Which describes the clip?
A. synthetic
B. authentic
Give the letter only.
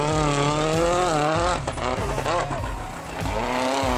B